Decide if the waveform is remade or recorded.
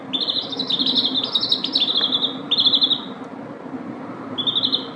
recorded